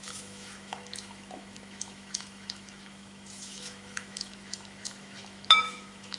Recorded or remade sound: remade